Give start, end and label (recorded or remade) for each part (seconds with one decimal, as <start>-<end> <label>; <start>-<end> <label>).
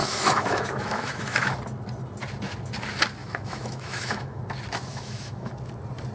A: 0.0-1.5 remade; 1.5-3.2 recorded; 3.2-4.4 remade; 4.4-4.9 recorded; 4.9-5.5 remade; 5.5-6.1 recorded